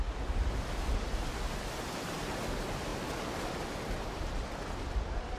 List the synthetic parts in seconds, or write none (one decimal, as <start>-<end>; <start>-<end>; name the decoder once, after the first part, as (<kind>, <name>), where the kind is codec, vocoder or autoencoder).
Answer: none